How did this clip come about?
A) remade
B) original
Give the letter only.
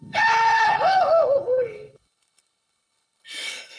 A